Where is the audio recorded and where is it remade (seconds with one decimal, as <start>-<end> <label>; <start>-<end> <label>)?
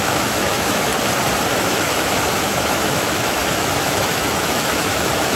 0.0-0.9 remade; 0.9-1.6 recorded; 1.6-5.4 remade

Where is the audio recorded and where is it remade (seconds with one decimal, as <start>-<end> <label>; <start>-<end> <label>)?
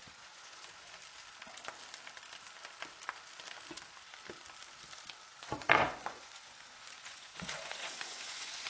0.0-1.0 remade; 1.0-5.3 recorded; 5.3-8.7 remade